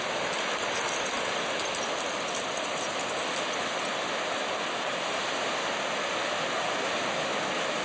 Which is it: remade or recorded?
recorded